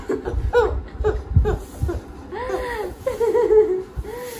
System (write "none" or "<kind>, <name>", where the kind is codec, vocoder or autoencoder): none